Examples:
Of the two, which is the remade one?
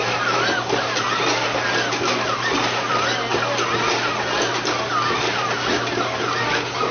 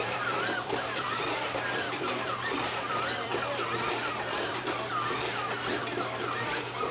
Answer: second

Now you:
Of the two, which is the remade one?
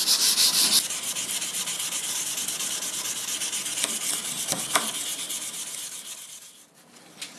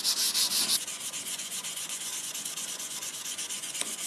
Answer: second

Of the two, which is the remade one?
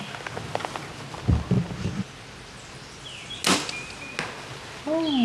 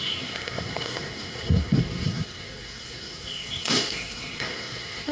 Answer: second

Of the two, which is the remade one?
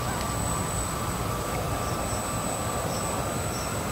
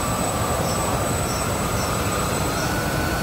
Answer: second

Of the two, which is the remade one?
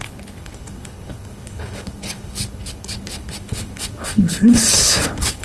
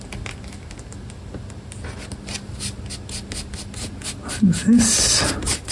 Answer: first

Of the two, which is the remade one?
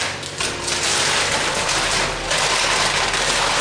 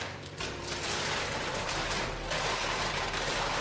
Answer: second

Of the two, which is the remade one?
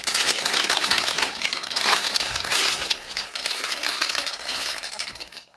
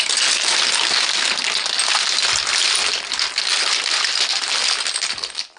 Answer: first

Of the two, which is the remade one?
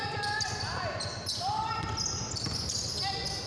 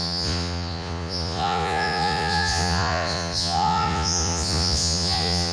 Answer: second